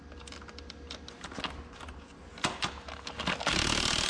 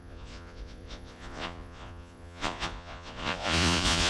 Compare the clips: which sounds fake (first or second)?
second